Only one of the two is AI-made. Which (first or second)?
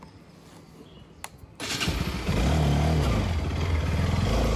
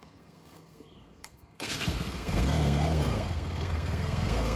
second